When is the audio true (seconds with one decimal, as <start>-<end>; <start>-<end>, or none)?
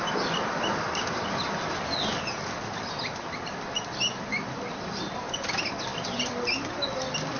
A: 0.0-7.4